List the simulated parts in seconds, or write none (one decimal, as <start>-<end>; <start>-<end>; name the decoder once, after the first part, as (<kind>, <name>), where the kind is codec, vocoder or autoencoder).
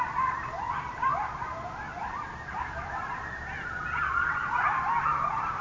0.0-5.6 (vocoder, BigVGAN v2)